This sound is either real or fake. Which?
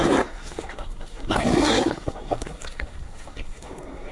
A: fake